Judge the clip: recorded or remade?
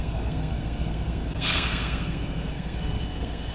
remade